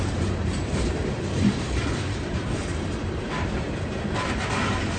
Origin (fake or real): fake